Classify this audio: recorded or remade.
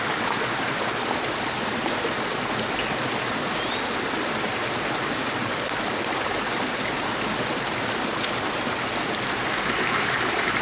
recorded